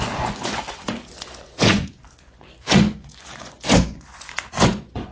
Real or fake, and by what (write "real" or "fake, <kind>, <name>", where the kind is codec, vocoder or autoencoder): fake, vocoder, Vocos